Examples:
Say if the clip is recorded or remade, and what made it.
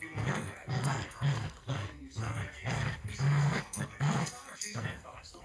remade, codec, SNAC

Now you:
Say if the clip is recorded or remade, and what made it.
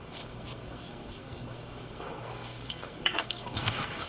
remade, codec, SNAC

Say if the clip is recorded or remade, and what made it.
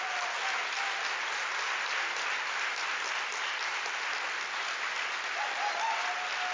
recorded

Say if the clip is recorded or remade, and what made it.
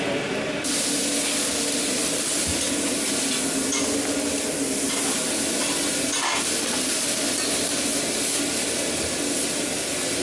recorded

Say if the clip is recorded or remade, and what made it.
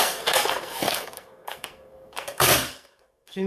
remade, codec, SNAC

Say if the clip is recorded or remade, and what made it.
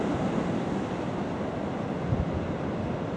recorded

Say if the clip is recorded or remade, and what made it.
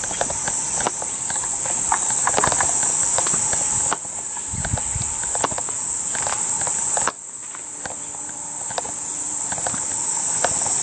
recorded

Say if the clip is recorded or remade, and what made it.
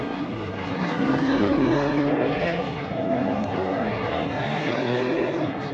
remade, codec, SNAC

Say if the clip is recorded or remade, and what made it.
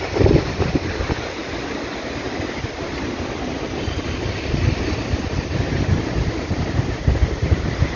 recorded